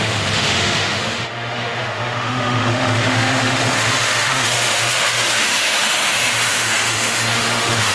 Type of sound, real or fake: fake